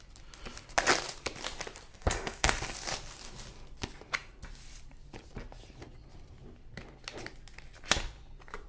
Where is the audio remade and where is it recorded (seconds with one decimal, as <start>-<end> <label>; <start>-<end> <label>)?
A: 0.0-1.9 recorded; 1.9-2.5 remade; 2.5-8.7 recorded